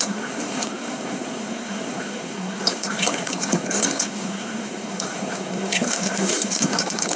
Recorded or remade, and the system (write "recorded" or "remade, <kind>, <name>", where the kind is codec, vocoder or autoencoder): remade, codec, SNAC